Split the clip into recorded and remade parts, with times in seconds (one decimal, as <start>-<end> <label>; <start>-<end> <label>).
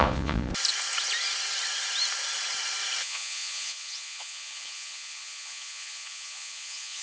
0.0-0.5 remade; 0.5-3.0 recorded; 3.0-7.0 remade